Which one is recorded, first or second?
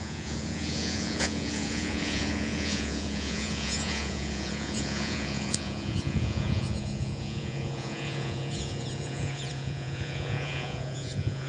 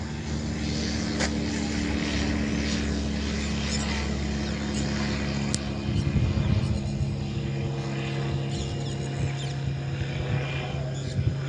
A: second